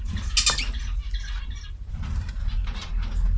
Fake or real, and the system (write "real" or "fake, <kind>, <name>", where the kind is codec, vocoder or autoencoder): real